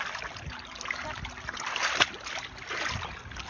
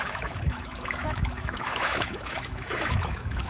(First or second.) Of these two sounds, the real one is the first